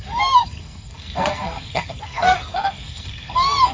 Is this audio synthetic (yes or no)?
yes